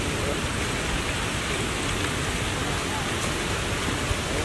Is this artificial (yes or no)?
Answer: no